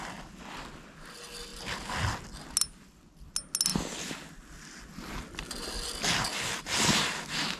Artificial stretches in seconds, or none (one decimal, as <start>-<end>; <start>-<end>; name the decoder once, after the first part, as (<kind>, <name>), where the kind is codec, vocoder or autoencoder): none